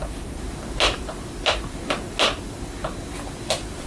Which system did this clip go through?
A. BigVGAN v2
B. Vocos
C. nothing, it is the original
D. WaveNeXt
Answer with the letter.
C